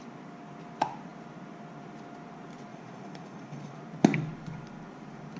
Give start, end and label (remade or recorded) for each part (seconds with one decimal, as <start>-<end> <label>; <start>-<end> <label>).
0.0-2.7 recorded; 2.7-3.8 remade; 3.8-5.4 recorded